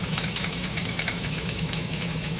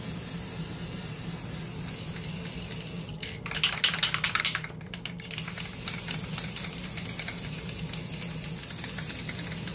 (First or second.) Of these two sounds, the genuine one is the second